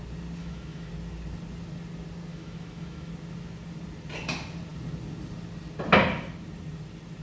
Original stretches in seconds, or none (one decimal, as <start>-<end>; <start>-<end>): 0.0-0.4; 0.9-2.3; 3.1-7.2